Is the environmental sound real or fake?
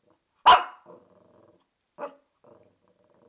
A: real